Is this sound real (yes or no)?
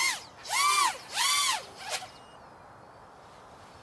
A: yes